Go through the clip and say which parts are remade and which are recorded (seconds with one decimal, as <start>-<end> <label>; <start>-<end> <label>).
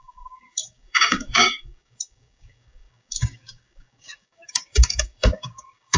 0.0-6.0 remade